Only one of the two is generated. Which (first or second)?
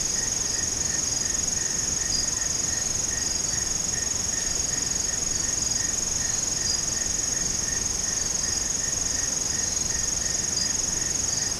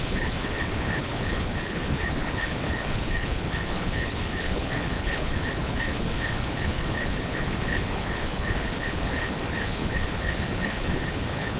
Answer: second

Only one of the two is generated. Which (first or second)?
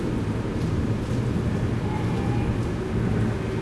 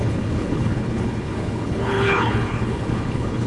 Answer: second